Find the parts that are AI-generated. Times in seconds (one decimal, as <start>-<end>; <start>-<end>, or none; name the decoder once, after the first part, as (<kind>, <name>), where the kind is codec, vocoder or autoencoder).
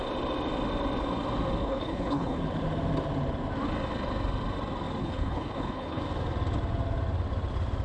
1.6-2.4 (codec, HILCodec); 5.0-6.0